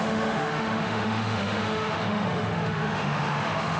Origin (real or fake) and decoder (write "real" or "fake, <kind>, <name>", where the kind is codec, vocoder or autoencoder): fake, autoencoder, DAC-VAE